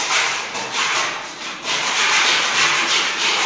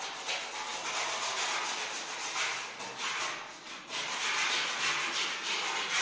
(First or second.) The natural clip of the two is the second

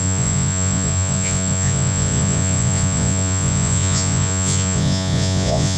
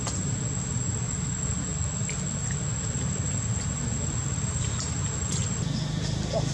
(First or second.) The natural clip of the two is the second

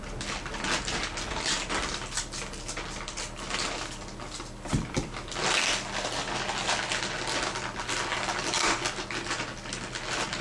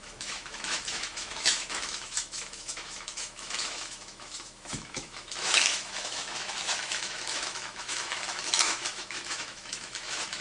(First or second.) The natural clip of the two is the first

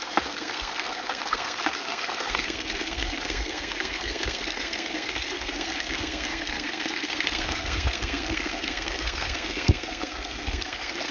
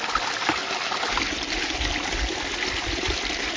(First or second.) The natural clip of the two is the second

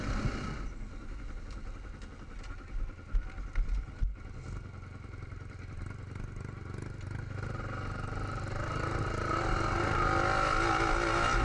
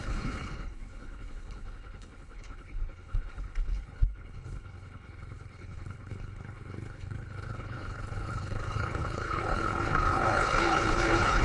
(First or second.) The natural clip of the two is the first